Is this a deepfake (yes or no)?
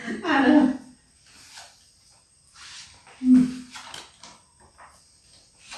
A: no